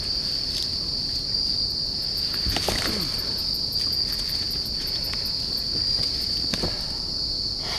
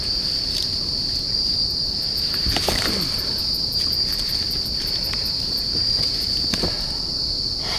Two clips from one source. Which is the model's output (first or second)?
second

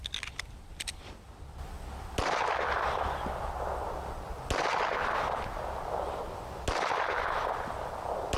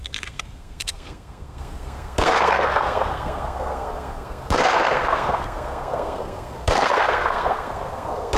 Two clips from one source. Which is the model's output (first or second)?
second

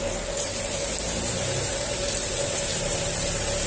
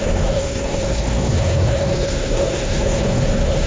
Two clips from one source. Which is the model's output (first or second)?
second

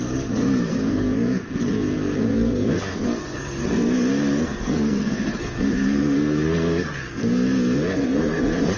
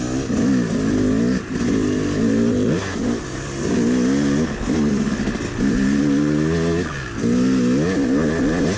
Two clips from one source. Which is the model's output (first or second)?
first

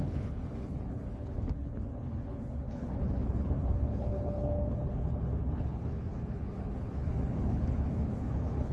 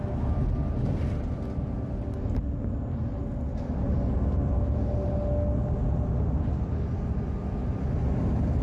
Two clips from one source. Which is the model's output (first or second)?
first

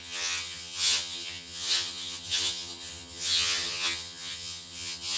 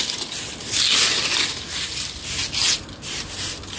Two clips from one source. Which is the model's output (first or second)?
first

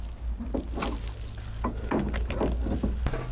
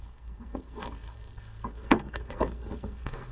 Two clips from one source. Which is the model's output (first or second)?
second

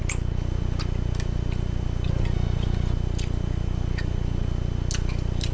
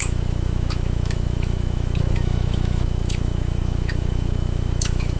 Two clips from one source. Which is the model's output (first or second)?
second